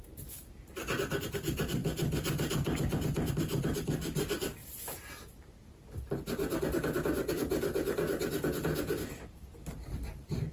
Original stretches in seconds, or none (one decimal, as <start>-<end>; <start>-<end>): 0.0-10.5